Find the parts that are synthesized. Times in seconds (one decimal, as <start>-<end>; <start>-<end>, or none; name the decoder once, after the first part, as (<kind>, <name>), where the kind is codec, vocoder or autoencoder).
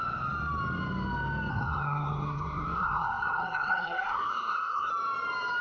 1.5-4.9 (codec, SNAC)